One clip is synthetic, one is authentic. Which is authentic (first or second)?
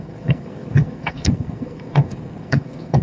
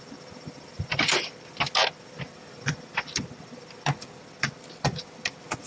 second